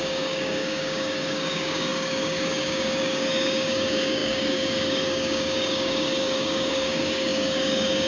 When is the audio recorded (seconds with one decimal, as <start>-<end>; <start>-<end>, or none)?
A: none